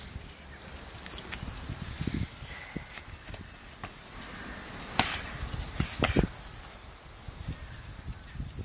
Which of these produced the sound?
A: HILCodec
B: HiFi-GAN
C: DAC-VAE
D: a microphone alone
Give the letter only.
D